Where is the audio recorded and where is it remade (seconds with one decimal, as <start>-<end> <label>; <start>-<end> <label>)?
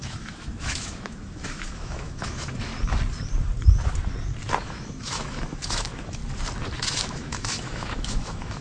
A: 0.0-2.7 remade; 2.7-4.6 recorded; 4.6-6.2 remade; 6.2-6.8 recorded; 6.8-8.6 remade